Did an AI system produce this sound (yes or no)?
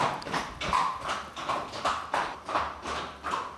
no